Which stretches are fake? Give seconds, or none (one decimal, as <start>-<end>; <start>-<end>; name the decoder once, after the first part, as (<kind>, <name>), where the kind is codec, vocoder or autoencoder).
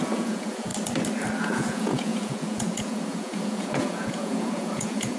0.0-0.7 (vocoder, Vocos); 1.4-5.2